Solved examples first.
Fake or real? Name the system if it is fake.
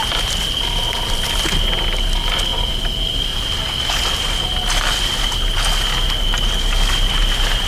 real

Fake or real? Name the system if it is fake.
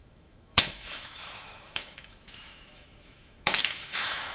fake, autoencoder, DAC-VAE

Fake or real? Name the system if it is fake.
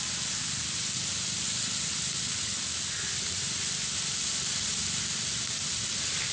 real